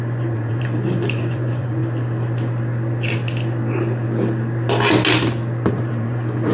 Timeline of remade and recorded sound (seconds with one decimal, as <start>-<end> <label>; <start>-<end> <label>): 0.0-1.8 remade; 1.8-5.7 recorded; 5.7-6.5 remade